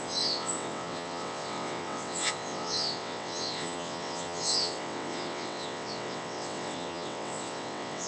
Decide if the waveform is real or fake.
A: fake